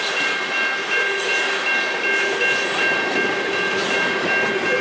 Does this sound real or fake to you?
real